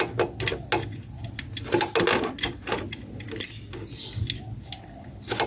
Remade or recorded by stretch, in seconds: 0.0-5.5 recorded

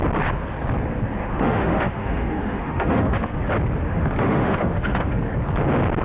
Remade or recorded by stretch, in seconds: 0.0-1.2 recorded; 1.2-3.4 remade; 3.4-3.8 recorded; 3.8-5.2 remade; 5.2-6.0 recorded